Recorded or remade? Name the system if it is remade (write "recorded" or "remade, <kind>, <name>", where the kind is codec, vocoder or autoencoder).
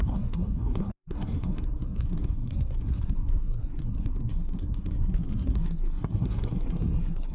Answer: remade, codec, SNAC